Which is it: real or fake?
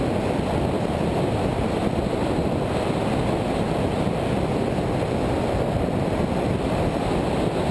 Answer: real